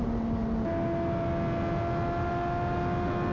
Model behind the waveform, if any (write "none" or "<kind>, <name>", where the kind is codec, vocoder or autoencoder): none